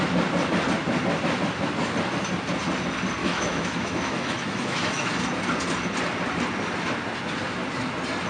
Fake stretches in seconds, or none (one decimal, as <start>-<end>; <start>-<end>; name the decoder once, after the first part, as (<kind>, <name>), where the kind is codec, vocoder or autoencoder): 3.2-5.1 (autoencoder, DAC-VAE)